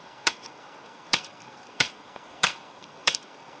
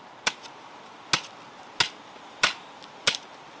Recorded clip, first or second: second